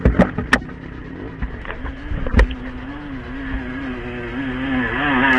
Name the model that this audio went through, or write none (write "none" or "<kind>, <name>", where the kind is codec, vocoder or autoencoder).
none